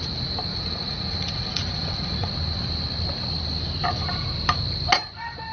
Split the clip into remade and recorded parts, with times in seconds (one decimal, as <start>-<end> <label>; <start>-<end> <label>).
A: 0.0-0.5 recorded; 0.5-2.3 remade; 2.3-5.5 recorded